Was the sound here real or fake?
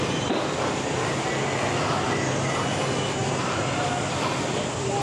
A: real